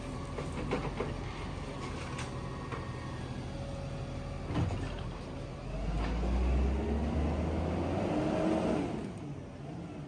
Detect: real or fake real